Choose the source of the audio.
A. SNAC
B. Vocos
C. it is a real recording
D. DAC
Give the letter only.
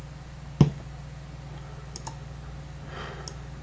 C